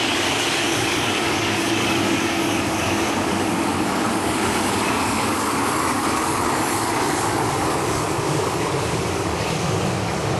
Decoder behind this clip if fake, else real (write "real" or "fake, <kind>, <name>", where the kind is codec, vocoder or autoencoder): fake, codec, DAC